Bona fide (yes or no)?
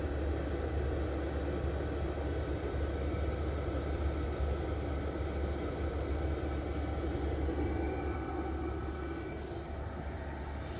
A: yes